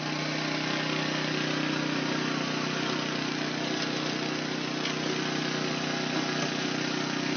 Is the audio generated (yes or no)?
no